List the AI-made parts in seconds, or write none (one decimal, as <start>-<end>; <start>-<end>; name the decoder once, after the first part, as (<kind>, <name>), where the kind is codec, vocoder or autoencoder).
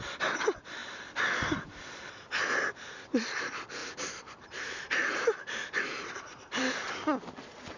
3.8-6.9 (vocoder, BigVGAN v2)